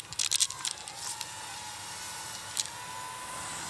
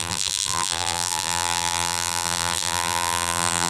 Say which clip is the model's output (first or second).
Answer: second